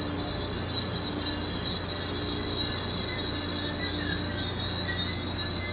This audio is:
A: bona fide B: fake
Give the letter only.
A